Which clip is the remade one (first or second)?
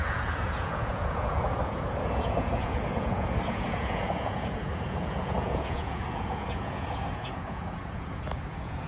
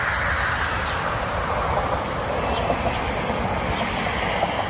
first